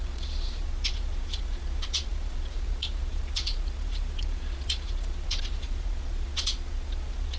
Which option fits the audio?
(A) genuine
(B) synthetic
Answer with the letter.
B